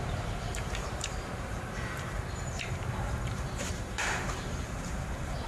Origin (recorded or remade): remade